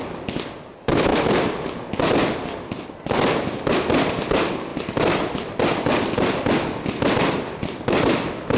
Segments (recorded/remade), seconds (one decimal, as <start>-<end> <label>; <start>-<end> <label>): 0.0-8.6 recorded